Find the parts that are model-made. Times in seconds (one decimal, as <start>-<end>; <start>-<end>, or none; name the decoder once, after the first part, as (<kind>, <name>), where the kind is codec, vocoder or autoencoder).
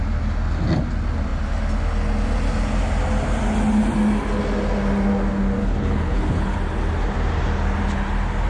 5.6-6.6 (codec, HILCodec)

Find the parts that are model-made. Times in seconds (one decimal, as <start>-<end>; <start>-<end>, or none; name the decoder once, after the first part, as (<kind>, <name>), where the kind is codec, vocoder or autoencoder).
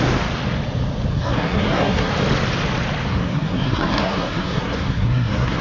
1.1-2.1 (codec, SNAC); 3.1-5.6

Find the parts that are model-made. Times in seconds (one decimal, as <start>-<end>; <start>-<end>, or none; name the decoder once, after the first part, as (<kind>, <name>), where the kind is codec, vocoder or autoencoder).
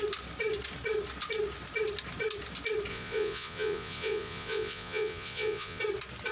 2.9-5.8 (vocoder, Vocos)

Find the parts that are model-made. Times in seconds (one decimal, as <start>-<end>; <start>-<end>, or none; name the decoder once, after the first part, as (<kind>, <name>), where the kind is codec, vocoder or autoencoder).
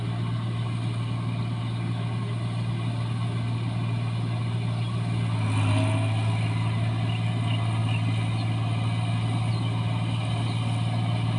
none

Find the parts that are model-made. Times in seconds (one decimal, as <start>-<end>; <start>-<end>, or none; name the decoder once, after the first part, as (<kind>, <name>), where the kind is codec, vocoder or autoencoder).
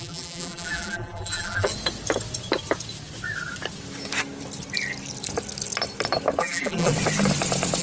0.0-1.7 (vocoder, BigVGAN v2); 6.4-6.9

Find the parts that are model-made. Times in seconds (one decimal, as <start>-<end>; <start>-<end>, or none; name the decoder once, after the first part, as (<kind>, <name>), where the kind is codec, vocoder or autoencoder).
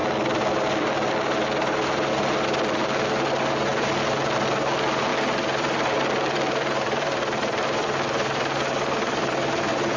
5.1-10.0 (vocoder, BigVGAN v2)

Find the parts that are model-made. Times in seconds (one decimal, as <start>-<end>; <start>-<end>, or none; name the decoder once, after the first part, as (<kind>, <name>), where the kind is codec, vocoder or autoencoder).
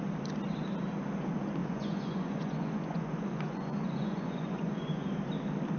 1.6-5.1 (vocoder, Vocos)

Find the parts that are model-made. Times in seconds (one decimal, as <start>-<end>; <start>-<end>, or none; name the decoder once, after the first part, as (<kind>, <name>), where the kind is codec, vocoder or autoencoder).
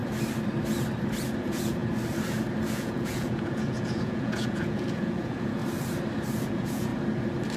1.4-1.8 (vocoder, Vocos); 2.7-5.6; 6.5-6.9